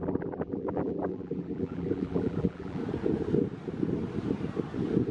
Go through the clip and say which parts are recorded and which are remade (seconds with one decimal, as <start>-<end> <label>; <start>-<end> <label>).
0.0-2.8 remade; 2.8-5.1 recorded